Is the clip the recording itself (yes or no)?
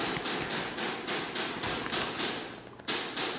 yes